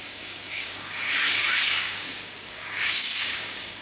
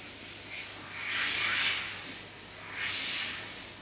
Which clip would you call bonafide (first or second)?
second